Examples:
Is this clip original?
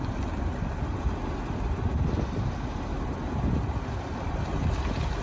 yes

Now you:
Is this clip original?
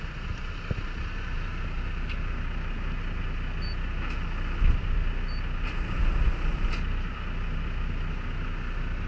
yes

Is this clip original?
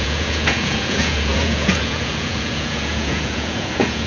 no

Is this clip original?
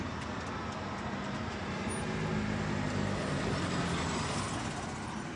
yes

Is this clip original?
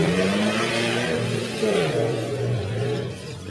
no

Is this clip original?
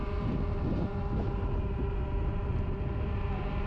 yes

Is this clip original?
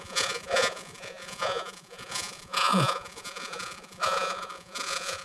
no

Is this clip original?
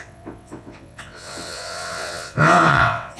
no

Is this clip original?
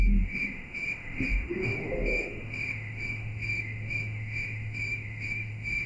no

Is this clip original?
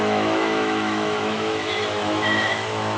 no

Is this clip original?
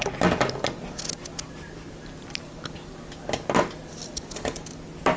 yes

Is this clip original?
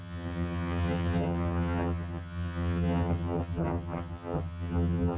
no